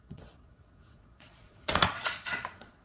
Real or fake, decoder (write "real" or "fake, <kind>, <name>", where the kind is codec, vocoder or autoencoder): fake, vocoder, Vocos